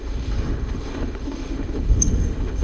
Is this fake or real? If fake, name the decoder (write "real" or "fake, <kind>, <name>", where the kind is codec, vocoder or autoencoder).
fake, autoencoder, DAC-VAE